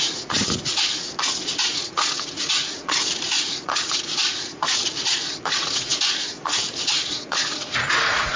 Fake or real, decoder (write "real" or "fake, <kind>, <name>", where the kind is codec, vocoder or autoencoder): fake, vocoder, Vocos